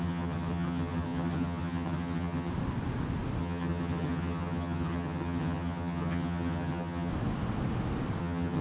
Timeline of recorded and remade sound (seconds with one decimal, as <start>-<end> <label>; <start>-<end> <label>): 0.0-2.5 remade; 2.5-3.4 recorded; 3.4-7.1 remade; 7.1-8.2 recorded; 8.2-8.6 remade